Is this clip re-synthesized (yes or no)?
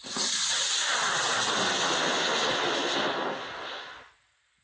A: no